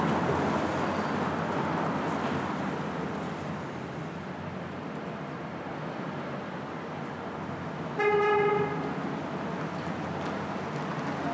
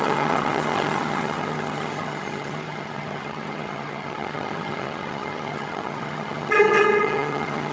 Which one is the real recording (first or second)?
first